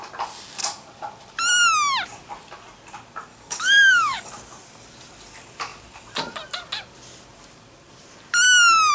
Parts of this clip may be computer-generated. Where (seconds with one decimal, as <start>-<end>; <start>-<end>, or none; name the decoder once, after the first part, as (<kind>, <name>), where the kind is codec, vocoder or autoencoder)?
3.3-4.3 (codec, DAC)